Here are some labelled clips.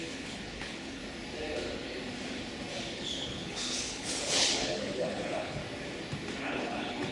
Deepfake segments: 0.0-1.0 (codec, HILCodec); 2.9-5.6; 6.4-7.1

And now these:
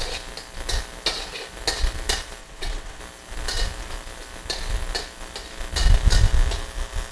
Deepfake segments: 2.4-3.0 (vocoder, WaveNeXt)

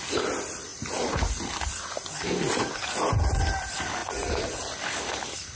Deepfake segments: none

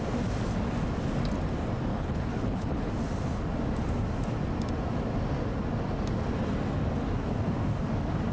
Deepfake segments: 1.9-2.9 (codec, HILCodec)

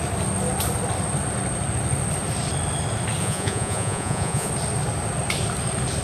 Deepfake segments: 3.2-4.5 (vocoder, Vocos)

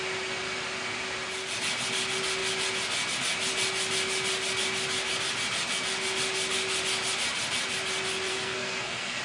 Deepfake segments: 8.3-9.2 (codec, SNAC)

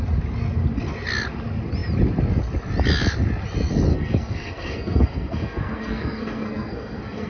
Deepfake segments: 3.9-7.3 (codec, SNAC)

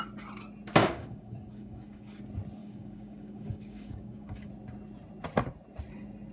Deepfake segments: 0.8-2.2 (codec, DAC); 2.6-4.5